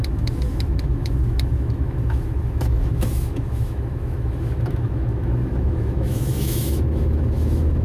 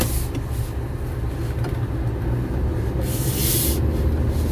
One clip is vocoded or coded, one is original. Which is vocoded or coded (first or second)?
first